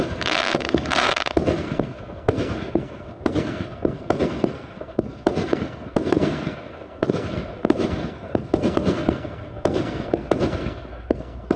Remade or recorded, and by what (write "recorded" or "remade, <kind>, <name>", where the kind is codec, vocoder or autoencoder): remade, codec, SNAC